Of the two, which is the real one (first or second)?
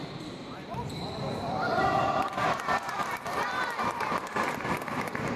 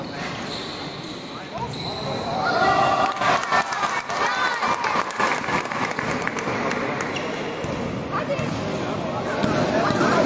second